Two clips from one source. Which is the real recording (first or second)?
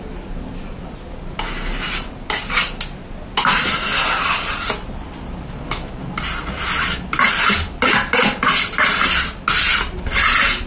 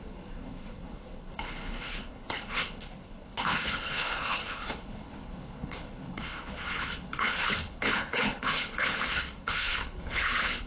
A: first